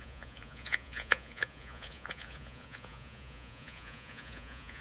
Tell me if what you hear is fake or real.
fake